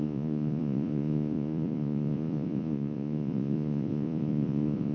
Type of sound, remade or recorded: remade